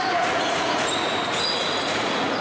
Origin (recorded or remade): remade